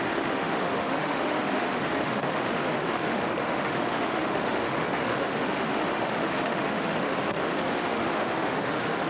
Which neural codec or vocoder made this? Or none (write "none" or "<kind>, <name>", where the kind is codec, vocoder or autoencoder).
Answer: autoencoder, DAC-VAE